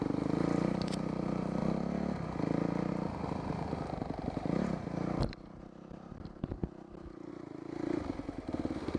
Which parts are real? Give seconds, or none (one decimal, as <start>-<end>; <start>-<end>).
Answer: 1.6-2.9; 6.6-7.3